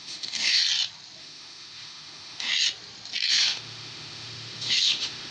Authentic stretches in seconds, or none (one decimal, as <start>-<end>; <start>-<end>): 0.6-1.2; 2.5-3.3